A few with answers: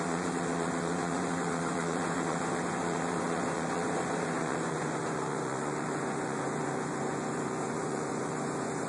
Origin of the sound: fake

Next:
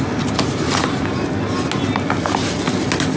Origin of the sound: real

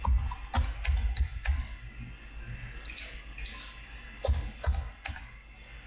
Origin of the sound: real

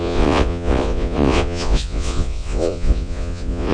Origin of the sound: fake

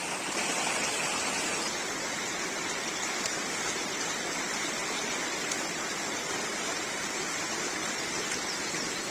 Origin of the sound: real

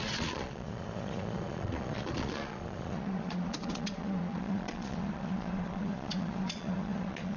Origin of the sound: fake